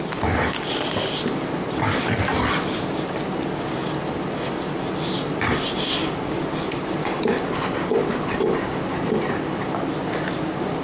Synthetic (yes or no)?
no